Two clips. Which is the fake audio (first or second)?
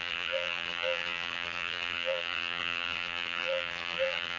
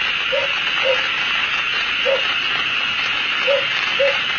first